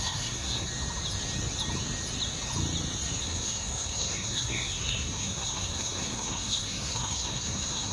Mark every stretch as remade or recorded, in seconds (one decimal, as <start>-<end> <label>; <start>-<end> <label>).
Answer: 0.0-0.7 remade; 0.7-3.2 recorded; 3.2-7.9 remade